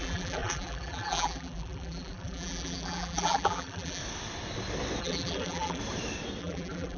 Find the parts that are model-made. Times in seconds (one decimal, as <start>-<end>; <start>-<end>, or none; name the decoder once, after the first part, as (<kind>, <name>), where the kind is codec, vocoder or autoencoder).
0.0-4.0 (vocoder, BigVGAN v2); 5.0-5.8; 6.4-7.0